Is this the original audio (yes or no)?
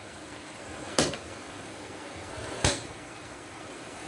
no